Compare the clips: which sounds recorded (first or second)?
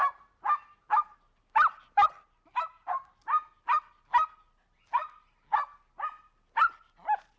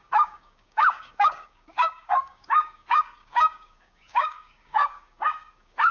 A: first